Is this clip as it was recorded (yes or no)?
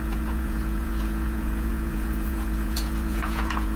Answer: no